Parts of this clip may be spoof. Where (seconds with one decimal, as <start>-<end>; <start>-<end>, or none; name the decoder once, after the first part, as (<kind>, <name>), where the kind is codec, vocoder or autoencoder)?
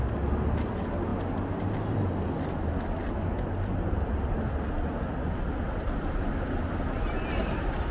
none